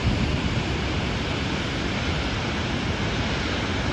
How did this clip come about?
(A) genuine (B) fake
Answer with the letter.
A